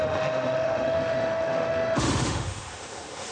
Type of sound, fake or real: fake